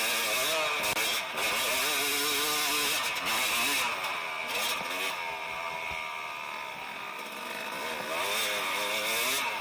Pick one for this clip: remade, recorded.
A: recorded